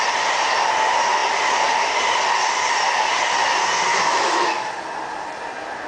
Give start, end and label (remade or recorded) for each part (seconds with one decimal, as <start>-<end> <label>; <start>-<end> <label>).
0.0-3.9 recorded; 3.9-4.7 remade; 4.7-5.9 recorded